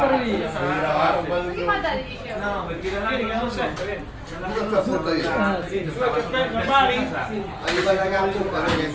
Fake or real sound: real